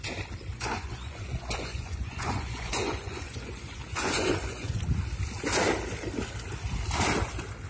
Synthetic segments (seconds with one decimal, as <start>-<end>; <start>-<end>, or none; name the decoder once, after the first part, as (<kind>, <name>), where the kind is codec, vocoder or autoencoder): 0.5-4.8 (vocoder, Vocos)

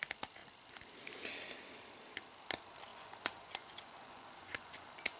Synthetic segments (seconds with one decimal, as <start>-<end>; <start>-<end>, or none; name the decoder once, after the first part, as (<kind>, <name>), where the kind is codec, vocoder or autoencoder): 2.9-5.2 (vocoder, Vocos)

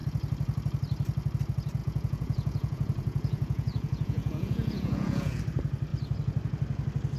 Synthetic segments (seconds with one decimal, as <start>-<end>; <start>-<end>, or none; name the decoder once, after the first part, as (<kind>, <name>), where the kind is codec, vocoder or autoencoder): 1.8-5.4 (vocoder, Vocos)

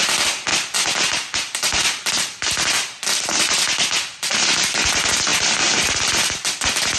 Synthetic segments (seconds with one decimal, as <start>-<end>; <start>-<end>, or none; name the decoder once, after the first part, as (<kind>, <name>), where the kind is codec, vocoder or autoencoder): none